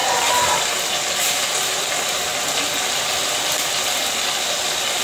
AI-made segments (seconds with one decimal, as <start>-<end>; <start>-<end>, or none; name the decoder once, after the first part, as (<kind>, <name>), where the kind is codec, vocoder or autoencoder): none